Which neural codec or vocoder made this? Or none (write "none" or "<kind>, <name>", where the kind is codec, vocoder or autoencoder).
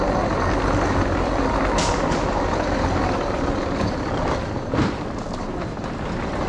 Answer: none